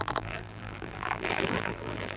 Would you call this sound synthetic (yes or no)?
yes